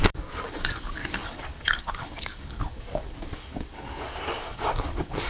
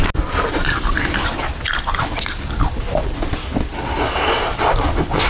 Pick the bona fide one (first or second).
second